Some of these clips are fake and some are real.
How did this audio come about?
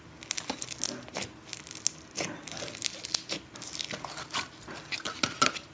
real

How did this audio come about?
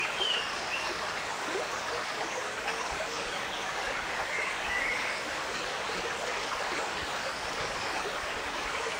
fake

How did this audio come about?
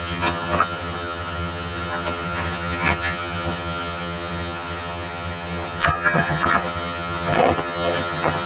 fake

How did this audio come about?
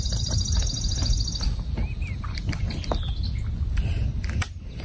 real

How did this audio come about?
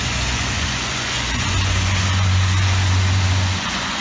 fake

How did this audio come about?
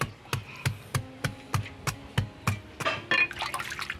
real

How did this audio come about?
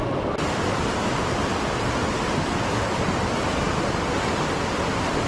fake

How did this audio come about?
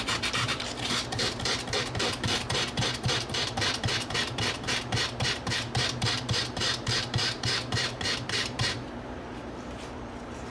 fake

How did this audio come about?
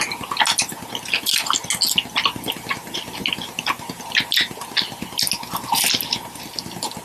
real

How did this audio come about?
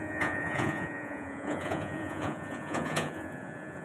fake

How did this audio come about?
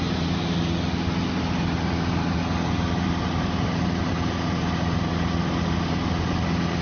real